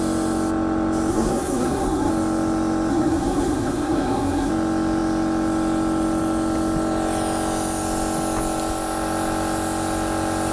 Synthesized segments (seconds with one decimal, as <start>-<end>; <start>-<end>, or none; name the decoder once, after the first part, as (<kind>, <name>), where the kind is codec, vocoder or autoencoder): 1.1-2.1 (codec, SNAC); 2.9-4.5